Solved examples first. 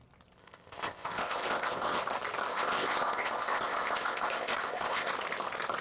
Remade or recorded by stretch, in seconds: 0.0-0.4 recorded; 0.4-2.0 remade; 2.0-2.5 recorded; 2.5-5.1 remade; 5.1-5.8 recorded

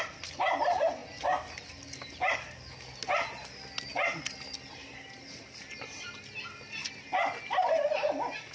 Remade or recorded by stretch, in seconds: 0.0-8.5 recorded

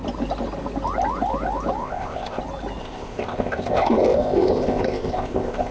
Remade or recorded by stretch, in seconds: 0.0-1.8 recorded; 1.8-2.4 remade; 2.4-2.8 recorded; 2.8-5.7 remade

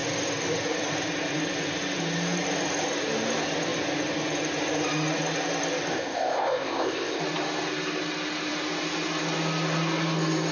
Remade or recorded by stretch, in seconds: 0.0-5.9 recorded; 5.9-7.2 remade; 7.2-10.5 recorded

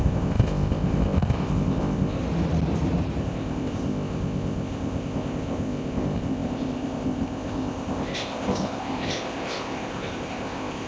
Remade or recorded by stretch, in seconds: 0.0-2.2 remade; 2.2-3.2 recorded; 3.2-10.9 remade